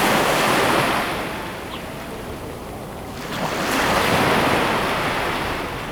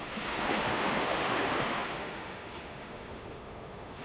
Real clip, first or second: first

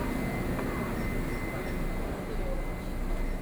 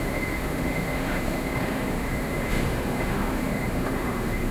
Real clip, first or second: first